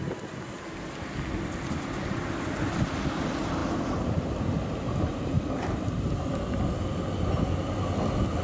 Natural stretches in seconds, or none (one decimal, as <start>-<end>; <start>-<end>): 0.0-8.4